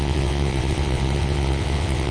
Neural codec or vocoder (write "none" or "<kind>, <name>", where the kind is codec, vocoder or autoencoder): vocoder, WaveNeXt